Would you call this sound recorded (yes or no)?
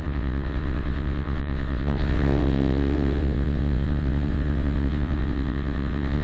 no